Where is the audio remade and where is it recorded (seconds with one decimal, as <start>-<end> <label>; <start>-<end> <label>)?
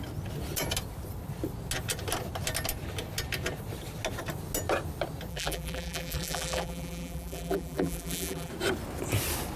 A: 0.0-5.3 recorded; 5.3-8.5 remade; 8.5-9.6 recorded